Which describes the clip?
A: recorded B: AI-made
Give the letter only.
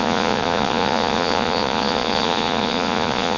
B